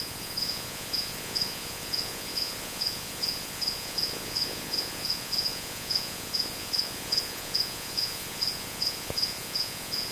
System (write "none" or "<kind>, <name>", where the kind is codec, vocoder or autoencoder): vocoder, Vocos